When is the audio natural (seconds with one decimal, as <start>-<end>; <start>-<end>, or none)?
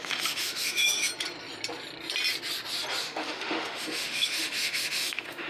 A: 1.1-3.0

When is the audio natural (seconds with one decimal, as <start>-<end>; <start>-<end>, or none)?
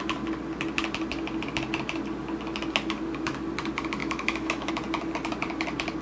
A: 0.0-4.0; 4.7-6.0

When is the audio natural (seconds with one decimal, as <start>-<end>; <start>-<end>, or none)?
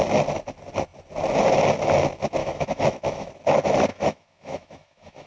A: 0.0-2.4; 3.3-3.9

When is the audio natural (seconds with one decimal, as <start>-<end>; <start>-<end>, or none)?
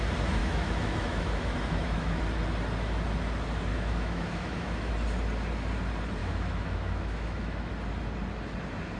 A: 0.0-0.4; 2.2-3.7; 4.9-6.2; 7.7-9.0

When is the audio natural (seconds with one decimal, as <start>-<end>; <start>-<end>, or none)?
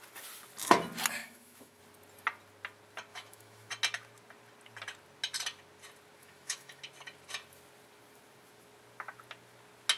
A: 0.0-1.2; 1.8-3.1; 3.7-6.2; 6.8-10.0